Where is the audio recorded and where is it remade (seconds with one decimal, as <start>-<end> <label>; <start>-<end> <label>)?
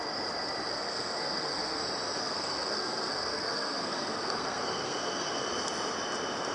0.0-0.7 recorded; 0.7-1.8 remade; 1.8-2.2 recorded; 2.2-5.5 remade; 5.5-6.5 recorded